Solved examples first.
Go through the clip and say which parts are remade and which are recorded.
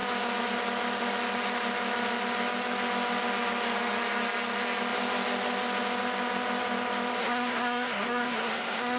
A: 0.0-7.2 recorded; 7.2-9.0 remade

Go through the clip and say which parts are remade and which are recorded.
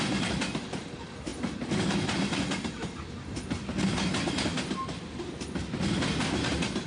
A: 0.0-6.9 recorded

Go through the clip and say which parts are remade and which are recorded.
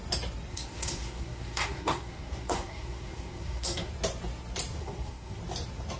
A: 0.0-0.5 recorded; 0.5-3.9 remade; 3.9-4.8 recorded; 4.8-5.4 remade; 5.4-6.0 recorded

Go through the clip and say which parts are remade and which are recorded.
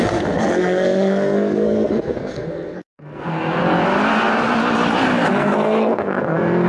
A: 0.0-3.6 remade; 3.6-5.3 recorded; 5.3-6.7 remade